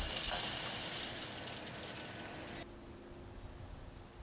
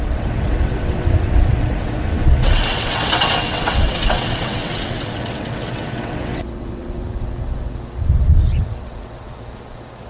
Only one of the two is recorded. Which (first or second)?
first